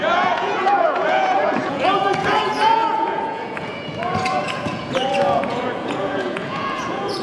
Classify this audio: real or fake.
fake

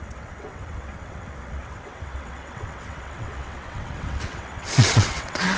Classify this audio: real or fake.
fake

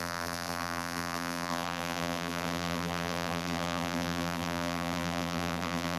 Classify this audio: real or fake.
fake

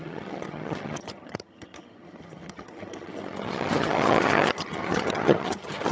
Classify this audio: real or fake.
fake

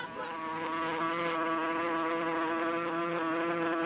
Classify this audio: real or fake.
real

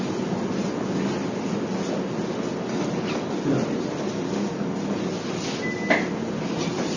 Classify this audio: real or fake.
real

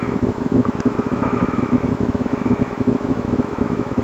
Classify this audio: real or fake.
fake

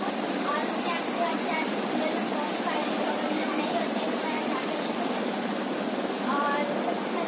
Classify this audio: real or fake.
real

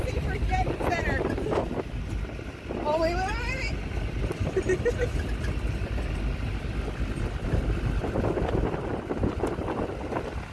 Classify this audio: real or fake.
real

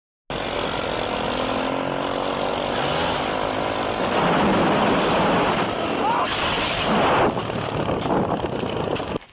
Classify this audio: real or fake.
real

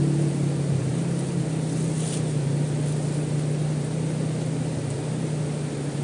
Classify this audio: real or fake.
real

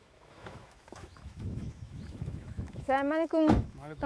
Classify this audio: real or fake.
fake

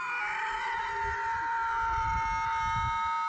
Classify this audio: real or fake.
real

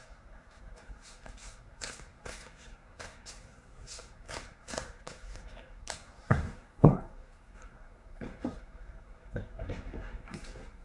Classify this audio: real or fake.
fake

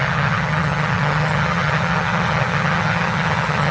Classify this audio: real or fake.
fake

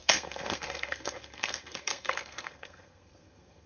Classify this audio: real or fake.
fake